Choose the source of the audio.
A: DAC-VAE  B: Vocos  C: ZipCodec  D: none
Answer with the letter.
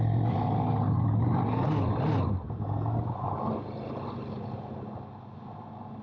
D